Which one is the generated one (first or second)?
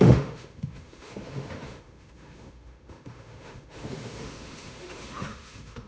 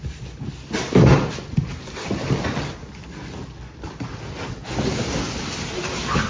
first